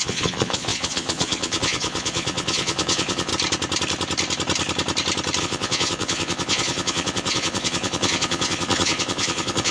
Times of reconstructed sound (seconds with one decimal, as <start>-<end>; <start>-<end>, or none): 0.0-3.3; 5.4-9.7

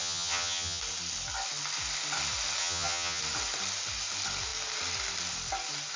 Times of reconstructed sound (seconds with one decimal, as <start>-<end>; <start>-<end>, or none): 0.0-0.8; 2.6-3.2

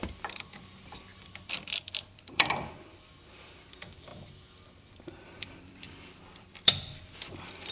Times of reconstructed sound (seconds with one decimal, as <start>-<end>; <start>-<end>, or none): 0.0-4.1; 5.2-7.7

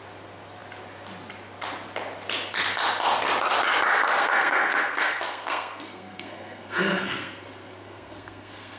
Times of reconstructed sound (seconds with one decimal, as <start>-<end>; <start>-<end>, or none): 4.2-8.8

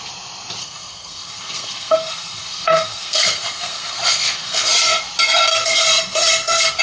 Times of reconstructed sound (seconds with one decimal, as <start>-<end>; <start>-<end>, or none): 0.6-4.7; 5.5-6.8

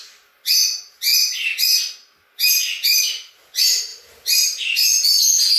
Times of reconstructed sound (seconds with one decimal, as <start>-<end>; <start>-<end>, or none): none

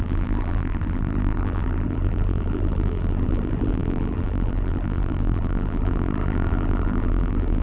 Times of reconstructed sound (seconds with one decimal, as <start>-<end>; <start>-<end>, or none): 0.0-7.6